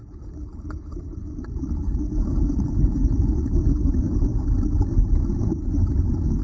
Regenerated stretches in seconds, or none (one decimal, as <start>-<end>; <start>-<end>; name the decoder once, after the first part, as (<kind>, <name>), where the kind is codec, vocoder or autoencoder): 0.0-4.3 (codec, HILCodec); 5.4-6.4